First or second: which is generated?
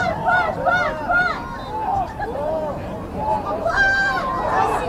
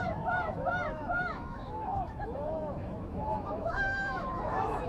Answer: second